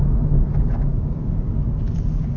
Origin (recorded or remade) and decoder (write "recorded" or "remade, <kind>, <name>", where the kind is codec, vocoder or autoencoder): recorded